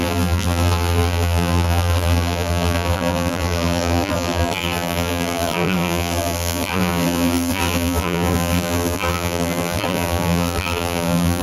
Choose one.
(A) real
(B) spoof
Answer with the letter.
B